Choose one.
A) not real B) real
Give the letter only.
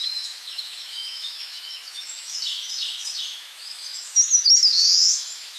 A